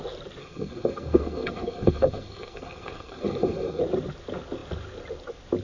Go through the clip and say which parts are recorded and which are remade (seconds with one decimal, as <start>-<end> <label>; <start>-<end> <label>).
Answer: 0.0-0.4 recorded; 0.4-3.8 remade; 3.8-5.6 recorded